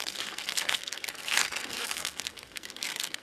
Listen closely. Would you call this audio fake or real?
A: fake